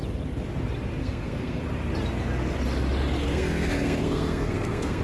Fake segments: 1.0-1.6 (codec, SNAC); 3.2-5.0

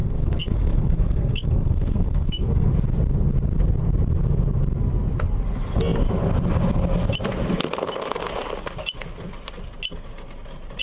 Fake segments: 0.0-2.7 (codec, SNAC)

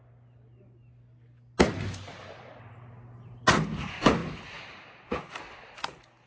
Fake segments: none

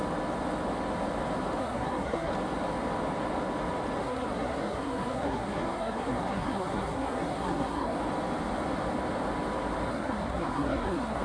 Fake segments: 1.6-2.3 (codec, SNAC); 4.0-8.0; 9.9-11.2

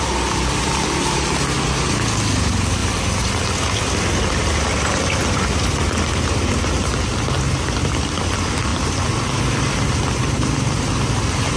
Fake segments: none

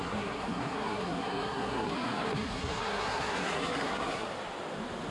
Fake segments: 0.0-4.3 (codec, SNAC)

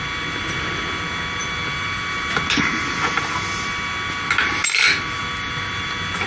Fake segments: none

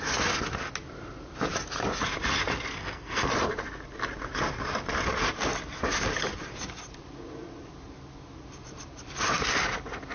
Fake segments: 2.7-3.3 (codec, SNAC)